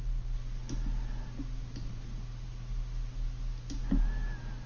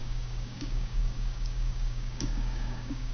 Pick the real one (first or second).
first